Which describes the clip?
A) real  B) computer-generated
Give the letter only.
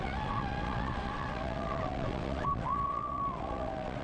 B